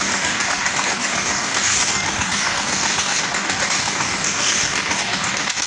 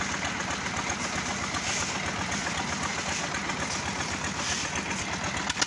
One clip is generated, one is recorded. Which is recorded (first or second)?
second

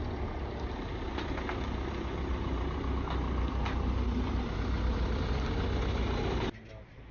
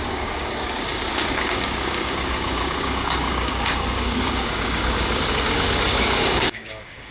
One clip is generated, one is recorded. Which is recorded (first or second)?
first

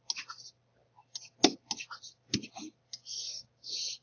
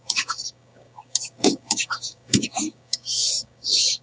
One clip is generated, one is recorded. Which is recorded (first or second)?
first